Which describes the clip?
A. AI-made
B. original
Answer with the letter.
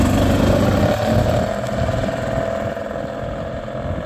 B